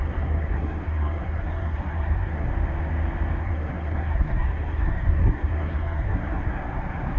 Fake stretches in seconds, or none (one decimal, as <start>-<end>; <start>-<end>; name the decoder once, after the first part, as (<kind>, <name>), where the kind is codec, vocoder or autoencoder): 0.0-2.5 (codec, SNAC); 3.4-7.2